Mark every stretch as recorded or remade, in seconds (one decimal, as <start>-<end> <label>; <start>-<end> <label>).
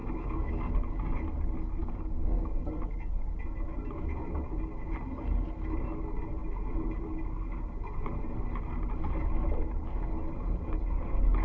0.0-0.7 remade; 0.7-1.8 recorded; 1.8-2.6 remade; 2.6-11.4 recorded